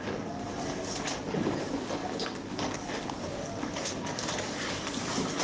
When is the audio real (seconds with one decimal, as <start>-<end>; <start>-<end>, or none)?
0.4-1.0